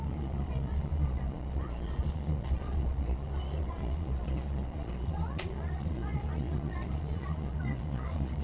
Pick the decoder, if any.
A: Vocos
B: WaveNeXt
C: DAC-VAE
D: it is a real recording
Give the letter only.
A